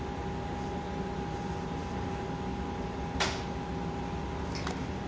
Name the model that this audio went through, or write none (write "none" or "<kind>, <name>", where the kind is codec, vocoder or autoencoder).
none